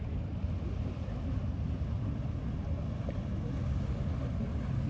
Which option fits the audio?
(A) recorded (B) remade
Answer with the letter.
A